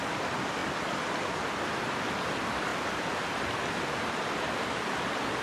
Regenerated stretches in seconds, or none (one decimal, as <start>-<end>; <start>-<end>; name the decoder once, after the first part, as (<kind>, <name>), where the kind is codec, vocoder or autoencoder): 0.0-2.7 (vocoder, BigVGAN v2); 3.9-5.4